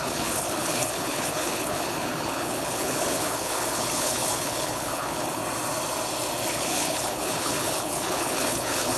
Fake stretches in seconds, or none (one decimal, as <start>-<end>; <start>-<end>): 0.0-5.4; 6.5-9.0